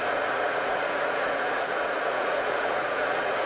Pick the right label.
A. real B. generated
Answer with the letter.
B